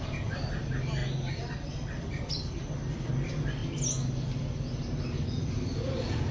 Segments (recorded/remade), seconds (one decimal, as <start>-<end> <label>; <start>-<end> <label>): 0.0-1.0 remade; 1.0-1.7 recorded; 1.7-3.6 remade; 3.6-5.0 recorded; 5.0-6.3 remade